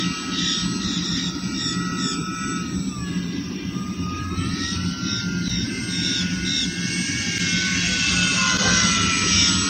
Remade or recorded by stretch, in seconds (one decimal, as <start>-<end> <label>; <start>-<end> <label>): 0.0-2.2 recorded; 2.2-5.0 remade; 5.0-9.7 recorded